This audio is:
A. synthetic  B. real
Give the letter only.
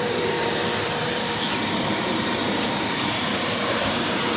A